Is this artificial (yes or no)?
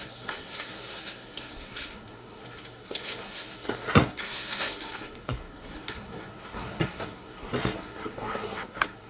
yes